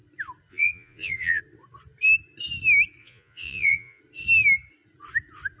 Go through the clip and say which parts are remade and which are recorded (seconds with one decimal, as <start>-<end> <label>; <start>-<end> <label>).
0.0-0.5 recorded; 0.5-1.4 remade; 1.4-3.0 recorded; 3.0-4.0 remade; 4.0-5.6 recorded